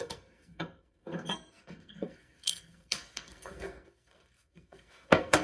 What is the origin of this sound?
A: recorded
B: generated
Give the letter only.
B